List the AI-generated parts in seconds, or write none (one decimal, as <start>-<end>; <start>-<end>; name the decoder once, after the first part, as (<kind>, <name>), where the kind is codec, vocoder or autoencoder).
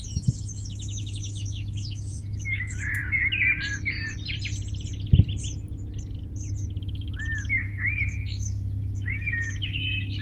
0.0-3.0 (autoencoder, DAC-VAE); 6.8-10.2